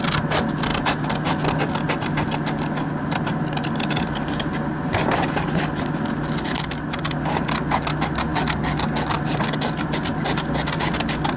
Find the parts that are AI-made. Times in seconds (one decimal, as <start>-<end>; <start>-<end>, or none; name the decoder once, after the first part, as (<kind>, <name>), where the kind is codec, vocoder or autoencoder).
8.3-9.2 (codec, DAC)